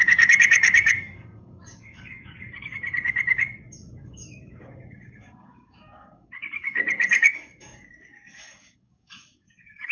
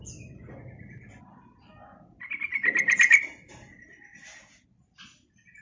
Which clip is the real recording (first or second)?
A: second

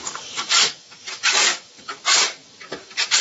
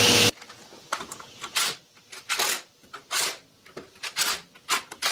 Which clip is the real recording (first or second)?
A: second